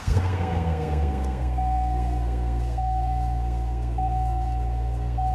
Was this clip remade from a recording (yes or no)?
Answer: yes